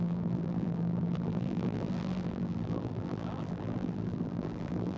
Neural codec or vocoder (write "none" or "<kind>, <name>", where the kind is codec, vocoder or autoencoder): vocoder, BigVGAN v2